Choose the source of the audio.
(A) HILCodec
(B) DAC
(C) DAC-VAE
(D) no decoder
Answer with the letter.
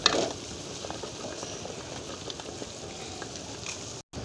D